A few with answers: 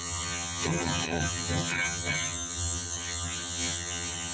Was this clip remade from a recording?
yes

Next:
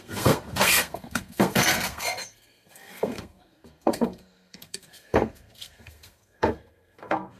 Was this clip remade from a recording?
yes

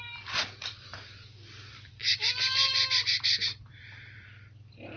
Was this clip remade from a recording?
yes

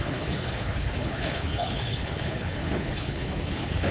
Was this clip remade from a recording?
yes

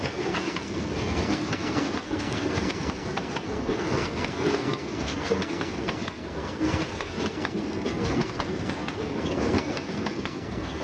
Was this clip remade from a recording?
yes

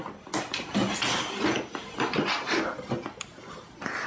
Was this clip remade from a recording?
no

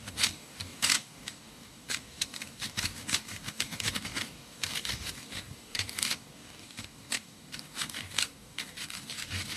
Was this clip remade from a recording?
yes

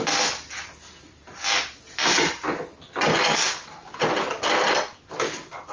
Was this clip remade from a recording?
no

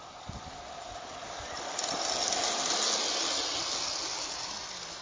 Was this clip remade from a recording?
no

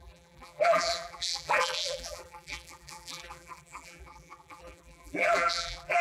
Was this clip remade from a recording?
yes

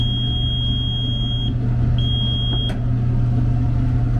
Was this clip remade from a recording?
no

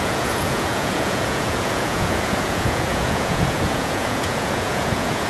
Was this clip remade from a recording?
yes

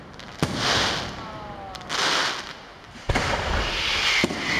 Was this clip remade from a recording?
no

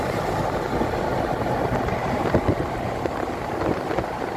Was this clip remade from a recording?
yes